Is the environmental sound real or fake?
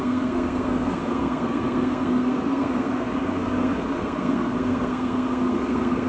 fake